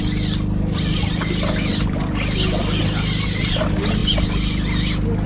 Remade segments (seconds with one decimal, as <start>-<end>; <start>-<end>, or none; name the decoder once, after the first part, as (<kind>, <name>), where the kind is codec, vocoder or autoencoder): 1.7-2.8 (vocoder, BigVGAN v2)